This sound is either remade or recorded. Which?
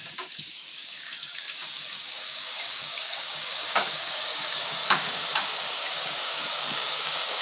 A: remade